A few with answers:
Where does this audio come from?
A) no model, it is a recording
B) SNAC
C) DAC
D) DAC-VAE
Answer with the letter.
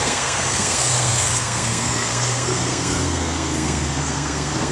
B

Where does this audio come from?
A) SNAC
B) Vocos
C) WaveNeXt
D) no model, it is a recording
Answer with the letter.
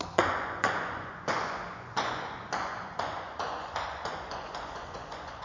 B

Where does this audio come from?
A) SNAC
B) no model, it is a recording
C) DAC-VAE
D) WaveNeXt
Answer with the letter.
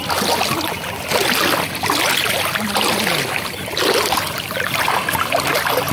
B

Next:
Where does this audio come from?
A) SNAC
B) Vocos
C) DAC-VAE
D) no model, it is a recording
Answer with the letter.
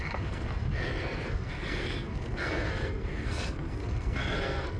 A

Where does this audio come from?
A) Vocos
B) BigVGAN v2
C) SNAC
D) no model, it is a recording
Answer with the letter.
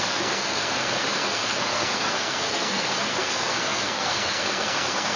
C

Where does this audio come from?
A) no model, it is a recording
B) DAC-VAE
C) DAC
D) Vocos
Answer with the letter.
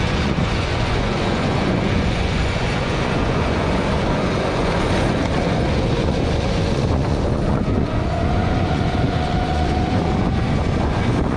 D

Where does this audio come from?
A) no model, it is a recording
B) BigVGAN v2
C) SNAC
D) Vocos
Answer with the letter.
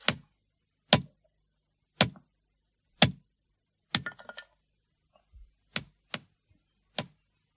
A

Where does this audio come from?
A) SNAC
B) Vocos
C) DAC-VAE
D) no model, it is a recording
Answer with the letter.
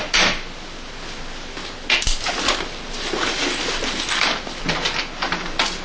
D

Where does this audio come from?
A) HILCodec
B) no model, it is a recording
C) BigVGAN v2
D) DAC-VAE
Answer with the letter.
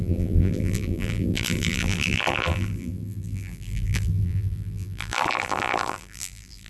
C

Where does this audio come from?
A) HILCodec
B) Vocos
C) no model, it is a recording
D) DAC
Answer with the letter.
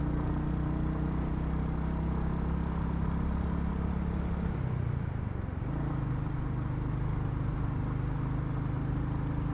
C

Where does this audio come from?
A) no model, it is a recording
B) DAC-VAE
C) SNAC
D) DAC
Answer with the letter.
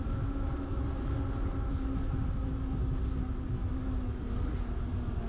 A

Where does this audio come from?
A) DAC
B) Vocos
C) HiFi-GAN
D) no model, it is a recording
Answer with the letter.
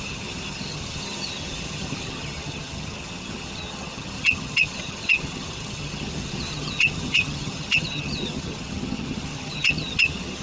C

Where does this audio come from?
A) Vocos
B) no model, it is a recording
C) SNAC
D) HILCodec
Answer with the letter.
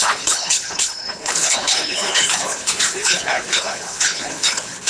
D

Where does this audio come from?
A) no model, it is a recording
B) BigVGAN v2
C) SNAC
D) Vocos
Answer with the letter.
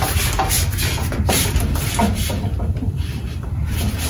A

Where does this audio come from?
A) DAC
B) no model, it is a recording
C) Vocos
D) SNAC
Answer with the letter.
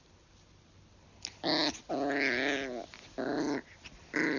B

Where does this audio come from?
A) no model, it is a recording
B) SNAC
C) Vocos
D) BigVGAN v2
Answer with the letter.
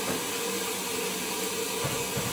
A